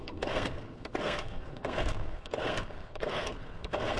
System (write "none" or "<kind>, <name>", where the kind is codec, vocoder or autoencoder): codec, SNAC